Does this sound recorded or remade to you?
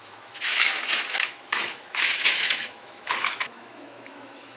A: remade